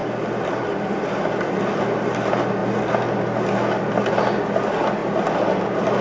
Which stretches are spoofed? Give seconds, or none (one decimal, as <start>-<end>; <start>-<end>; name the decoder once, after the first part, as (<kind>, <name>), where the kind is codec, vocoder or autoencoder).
0.5-2.6 (vocoder, BigVGAN v2); 3.8-6.0